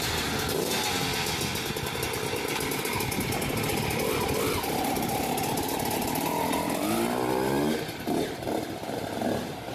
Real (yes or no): yes